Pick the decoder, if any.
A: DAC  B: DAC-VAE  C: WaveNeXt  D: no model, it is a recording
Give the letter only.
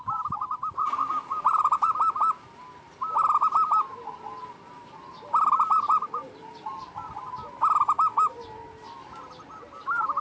D